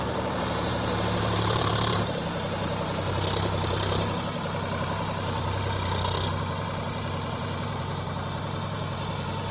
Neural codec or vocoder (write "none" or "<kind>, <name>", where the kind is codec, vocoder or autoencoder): vocoder, BigVGAN v2